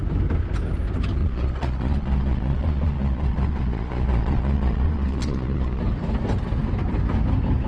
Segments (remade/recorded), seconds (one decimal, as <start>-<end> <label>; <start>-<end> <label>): 0.0-1.2 recorded; 1.2-5.8 remade; 5.8-7.7 recorded